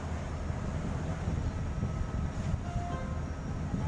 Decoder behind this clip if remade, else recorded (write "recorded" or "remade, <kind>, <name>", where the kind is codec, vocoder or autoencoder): recorded